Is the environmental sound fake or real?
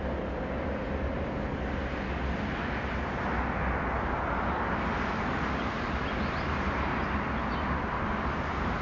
real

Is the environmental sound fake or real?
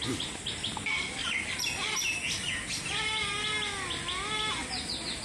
real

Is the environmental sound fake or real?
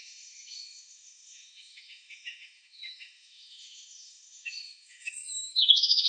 fake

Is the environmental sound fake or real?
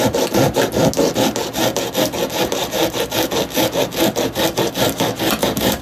real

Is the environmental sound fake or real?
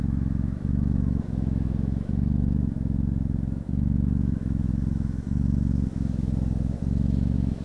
fake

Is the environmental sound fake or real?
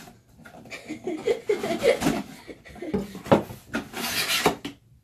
real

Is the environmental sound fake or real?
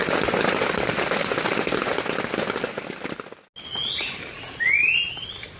real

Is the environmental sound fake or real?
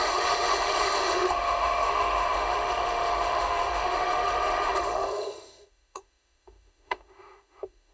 fake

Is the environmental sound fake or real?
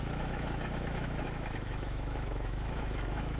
fake